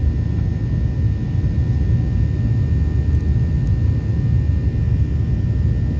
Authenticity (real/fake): real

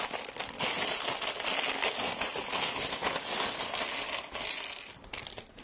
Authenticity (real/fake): real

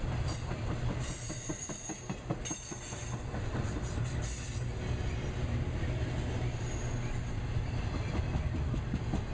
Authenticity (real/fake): real